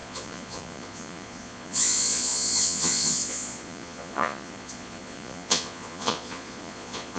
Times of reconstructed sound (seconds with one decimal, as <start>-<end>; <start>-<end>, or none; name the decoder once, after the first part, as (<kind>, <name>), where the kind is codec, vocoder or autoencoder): 0.0-7.2 (vocoder, Vocos)